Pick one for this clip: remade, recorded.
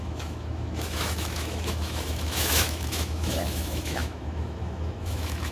remade